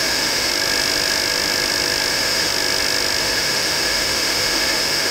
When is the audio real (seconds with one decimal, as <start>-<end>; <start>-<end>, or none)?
0.5-2.1; 2.5-3.2